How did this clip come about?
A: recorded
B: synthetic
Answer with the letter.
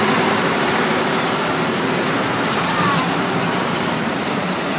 B